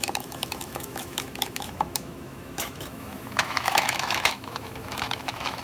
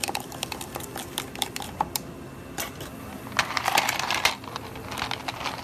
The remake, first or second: first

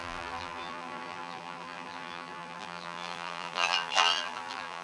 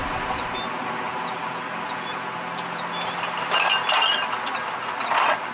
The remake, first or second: first